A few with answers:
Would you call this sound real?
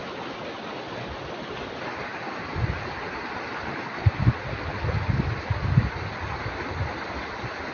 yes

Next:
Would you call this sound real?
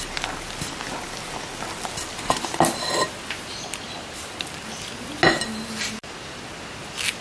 yes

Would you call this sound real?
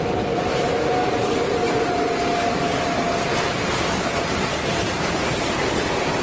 yes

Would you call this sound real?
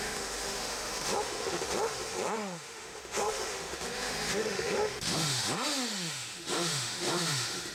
no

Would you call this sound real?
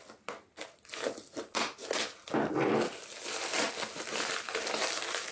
yes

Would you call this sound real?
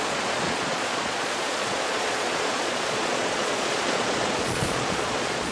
no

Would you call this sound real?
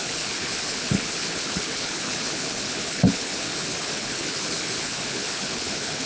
no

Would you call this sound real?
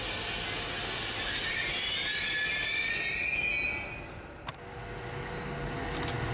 yes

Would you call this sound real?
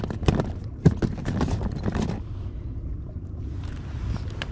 yes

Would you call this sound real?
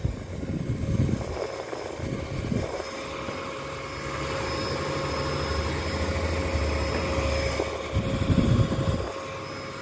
yes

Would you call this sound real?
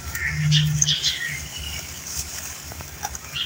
no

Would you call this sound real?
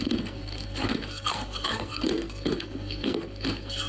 no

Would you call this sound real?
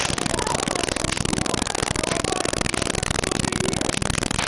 yes